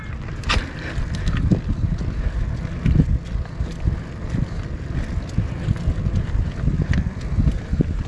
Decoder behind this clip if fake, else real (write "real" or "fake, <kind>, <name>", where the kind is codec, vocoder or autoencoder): real